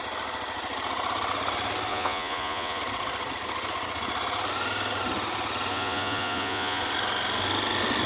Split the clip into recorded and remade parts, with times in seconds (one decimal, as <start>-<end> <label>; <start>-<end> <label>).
0.0-1.9 recorded; 1.9-2.8 remade; 2.8-5.7 recorded; 5.7-6.8 remade; 6.8-8.1 recorded